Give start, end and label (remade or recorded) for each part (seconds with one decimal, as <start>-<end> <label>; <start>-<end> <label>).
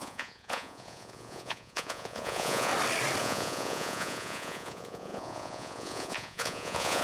0.0-2.7 remade; 2.7-3.2 recorded; 3.2-7.0 remade